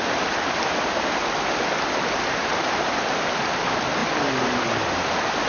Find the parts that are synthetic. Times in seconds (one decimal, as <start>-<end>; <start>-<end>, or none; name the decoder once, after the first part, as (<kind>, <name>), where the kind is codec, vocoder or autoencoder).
none